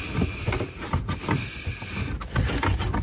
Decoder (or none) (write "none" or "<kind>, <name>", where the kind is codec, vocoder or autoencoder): vocoder, BigVGAN v2